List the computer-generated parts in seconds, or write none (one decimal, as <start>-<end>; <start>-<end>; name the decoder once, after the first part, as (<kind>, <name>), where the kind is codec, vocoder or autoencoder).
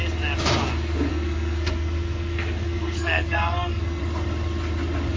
1.1-4.0 (codec, SNAC)